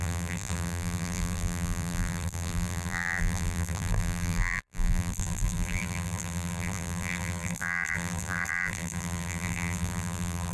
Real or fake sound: fake